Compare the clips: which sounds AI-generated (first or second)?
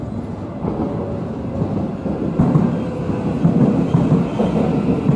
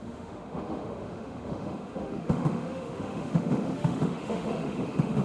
second